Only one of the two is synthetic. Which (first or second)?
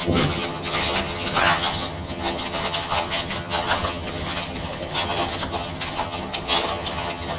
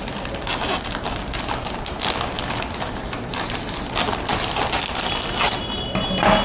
first